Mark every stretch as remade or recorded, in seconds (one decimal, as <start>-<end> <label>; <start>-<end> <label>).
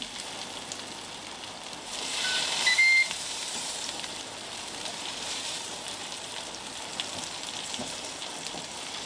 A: 0.0-1.4 recorded; 1.4-6.6 remade; 6.6-7.8 recorded; 7.8-8.3 remade; 8.3-9.1 recorded